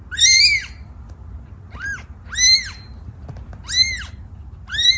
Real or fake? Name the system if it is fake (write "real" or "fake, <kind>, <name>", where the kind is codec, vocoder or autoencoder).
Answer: real